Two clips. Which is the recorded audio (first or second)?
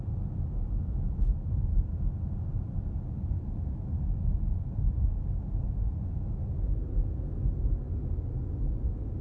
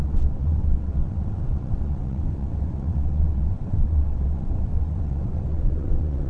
first